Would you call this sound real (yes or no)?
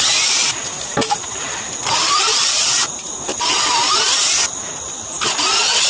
yes